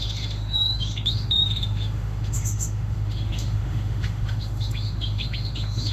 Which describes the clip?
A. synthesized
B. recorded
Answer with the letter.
A